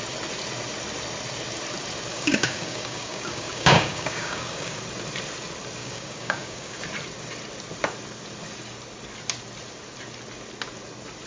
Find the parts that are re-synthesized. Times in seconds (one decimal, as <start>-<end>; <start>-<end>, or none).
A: 2.1-4.8; 5.8-6.8